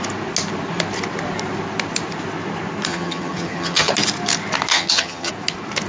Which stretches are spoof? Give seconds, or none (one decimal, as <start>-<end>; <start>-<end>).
2.9-3.9; 4.7-5.3